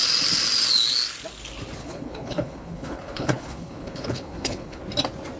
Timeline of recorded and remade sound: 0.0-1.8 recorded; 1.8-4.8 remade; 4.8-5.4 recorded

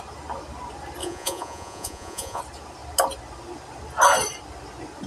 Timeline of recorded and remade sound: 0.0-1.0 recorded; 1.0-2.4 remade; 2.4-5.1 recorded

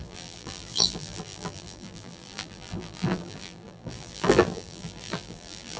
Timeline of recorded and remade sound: 0.0-5.8 remade

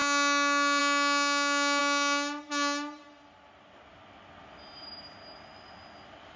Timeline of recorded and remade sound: 0.0-6.4 recorded